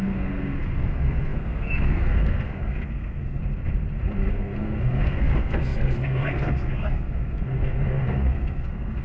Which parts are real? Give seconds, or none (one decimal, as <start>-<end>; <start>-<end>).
3.4-4.3